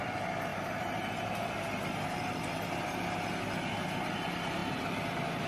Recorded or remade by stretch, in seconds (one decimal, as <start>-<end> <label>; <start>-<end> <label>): 0.0-0.5 recorded; 0.5-1.5 remade; 1.5-5.5 recorded